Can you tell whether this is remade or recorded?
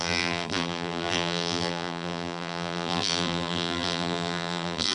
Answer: remade